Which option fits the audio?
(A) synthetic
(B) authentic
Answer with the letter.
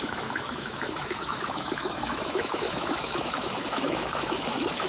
A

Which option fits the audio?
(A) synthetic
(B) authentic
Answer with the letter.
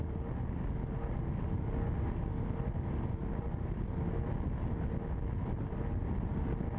B